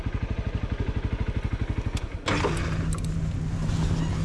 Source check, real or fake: real